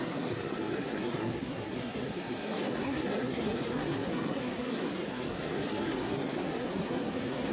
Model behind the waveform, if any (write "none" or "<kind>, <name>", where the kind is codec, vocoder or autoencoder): codec, SNAC